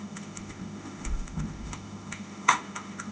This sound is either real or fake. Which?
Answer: fake